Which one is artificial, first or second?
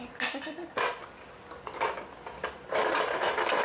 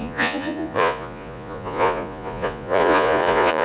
second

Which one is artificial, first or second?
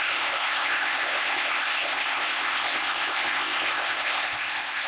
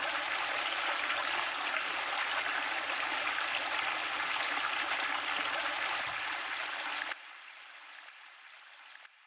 first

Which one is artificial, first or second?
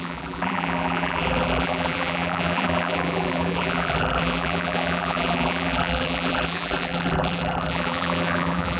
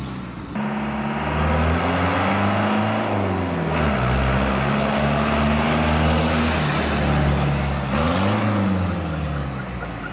first